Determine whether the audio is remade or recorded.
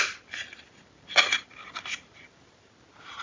recorded